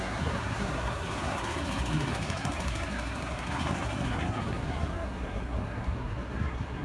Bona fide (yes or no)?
no